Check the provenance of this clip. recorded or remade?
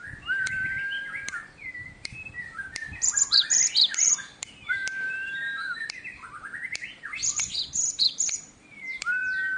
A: remade